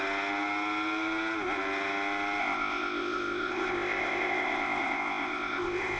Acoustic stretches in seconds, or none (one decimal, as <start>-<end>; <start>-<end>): 0.0-2.4